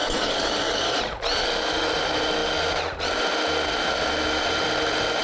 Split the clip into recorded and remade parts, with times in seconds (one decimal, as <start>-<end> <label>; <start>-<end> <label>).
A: 0.0-1.0 remade; 1.0-5.2 recorded